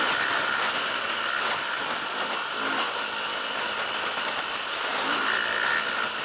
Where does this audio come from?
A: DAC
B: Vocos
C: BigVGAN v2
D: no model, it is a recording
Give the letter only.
D